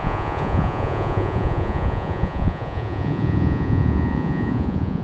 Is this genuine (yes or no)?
no